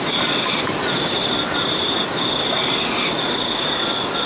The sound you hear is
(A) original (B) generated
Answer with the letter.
A